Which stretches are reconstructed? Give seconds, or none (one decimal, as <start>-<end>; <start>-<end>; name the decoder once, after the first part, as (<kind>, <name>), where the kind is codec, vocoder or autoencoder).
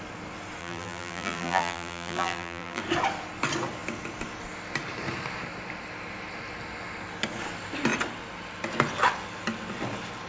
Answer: 0.6-2.8 (vocoder, BigVGAN v2)